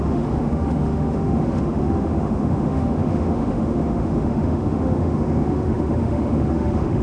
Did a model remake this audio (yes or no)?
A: yes